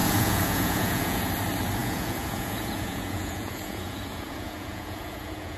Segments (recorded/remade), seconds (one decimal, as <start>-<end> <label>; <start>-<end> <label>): 0.0-1.2 remade; 1.2-1.8 recorded; 1.8-5.6 remade